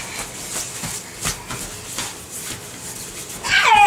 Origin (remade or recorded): recorded